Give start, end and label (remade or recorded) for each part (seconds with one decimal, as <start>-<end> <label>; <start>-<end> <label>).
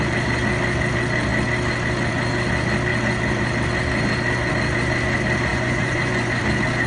0.0-5.5 recorded; 5.5-6.4 remade; 6.4-6.9 recorded